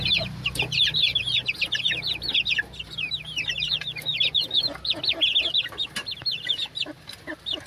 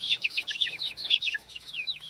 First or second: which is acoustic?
first